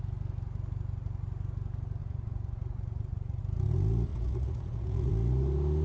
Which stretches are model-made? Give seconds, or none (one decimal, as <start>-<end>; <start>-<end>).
2.0-3.4; 4.1-5.1